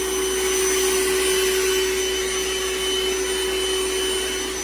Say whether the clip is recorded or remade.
recorded